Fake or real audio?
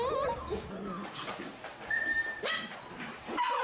real